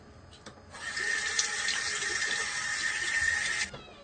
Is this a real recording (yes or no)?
yes